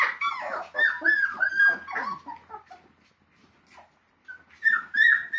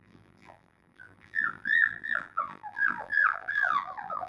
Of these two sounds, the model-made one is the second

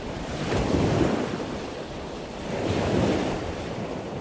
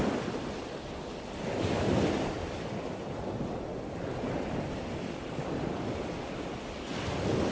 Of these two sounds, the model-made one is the first